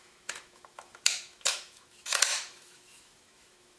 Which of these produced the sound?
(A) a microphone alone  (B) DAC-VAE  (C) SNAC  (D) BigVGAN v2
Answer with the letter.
B